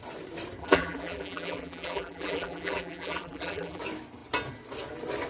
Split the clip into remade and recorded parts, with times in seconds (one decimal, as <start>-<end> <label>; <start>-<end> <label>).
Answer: 0.0-0.6 recorded; 0.6-3.8 remade; 3.8-5.3 recorded